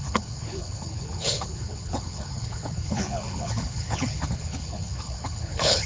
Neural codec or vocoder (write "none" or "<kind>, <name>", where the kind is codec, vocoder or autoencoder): codec, HILCodec